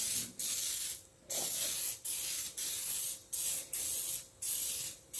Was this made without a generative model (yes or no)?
yes